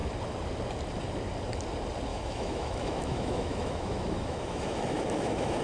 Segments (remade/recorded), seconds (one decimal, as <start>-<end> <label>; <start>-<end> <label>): 0.0-2.1 recorded; 2.1-5.6 remade